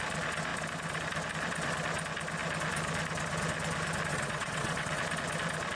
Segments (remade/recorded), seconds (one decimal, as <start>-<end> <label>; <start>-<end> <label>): 0.0-4.1 recorded; 4.1-5.0 remade; 5.0-5.8 recorded